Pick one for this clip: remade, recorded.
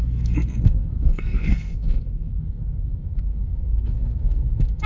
remade